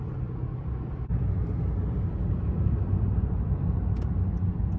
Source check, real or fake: real